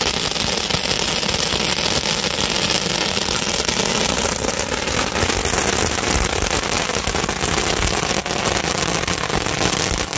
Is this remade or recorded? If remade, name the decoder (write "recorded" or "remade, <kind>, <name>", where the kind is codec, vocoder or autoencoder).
recorded